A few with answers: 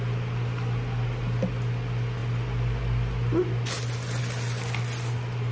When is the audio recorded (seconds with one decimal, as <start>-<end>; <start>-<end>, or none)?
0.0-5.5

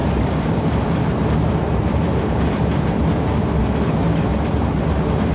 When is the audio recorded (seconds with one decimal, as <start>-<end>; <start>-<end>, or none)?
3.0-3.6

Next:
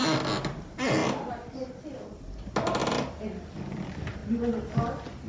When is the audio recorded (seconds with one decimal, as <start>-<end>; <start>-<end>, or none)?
0.0-5.3